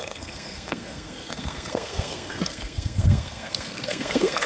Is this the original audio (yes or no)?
no